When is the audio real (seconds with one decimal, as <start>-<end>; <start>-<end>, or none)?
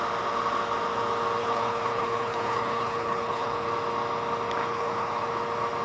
0.0-1.4; 3.7-4.6; 5.3-5.8